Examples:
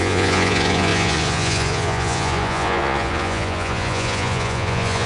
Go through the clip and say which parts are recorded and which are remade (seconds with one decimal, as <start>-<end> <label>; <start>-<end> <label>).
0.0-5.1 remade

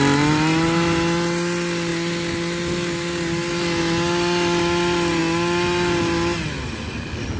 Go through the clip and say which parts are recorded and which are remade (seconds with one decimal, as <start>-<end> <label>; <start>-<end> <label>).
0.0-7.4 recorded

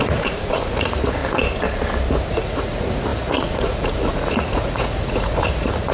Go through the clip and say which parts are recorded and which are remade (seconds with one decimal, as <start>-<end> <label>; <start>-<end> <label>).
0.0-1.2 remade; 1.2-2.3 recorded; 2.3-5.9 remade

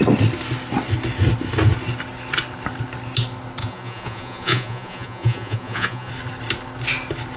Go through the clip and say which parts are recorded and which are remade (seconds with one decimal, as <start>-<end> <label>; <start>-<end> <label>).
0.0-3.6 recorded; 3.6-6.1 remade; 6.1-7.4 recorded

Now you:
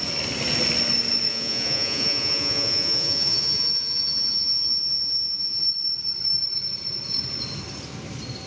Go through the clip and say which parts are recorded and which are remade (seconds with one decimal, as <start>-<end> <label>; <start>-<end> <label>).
0.0-1.3 recorded; 1.3-5.6 remade; 5.6-8.5 recorded